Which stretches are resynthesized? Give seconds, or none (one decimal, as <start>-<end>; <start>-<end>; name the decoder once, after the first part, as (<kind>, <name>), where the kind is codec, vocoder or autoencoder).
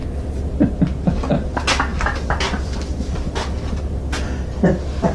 none